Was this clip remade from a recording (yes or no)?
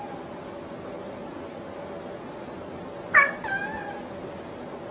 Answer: no